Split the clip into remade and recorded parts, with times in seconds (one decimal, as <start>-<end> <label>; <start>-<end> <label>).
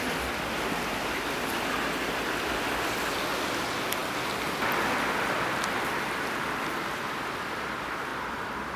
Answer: 0.0-8.8 recorded